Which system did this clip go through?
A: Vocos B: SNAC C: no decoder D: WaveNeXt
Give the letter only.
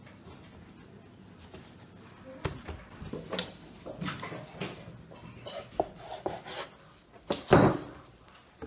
C